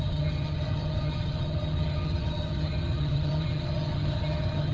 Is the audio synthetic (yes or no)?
yes